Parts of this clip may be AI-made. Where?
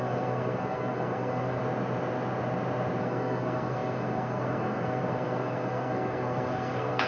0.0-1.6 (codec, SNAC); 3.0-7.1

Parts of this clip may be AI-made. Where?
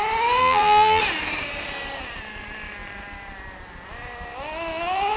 0.4-1.0 (vocoder, BigVGAN v2)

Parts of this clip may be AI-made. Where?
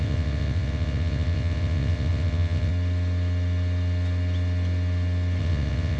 0.0-2.7 (vocoder, WaveNeXt); 5.4-6.0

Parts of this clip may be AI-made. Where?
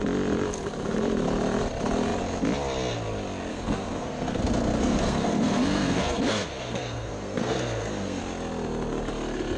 3.5-8.2 (codec, SNAC)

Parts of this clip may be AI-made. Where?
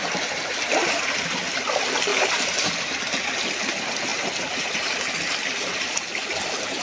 2.1-2.9 (vocoder, BigVGAN v2)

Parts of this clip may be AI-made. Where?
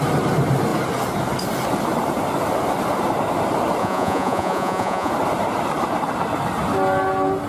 3.8-5.1 (vocoder, Vocos)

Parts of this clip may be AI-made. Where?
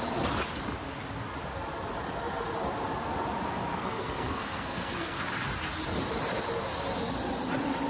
3.7-5.2 (codec, SNAC)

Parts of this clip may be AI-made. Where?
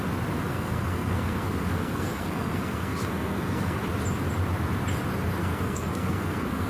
0.5-3.8 (codec, SNAC); 5.4-6.7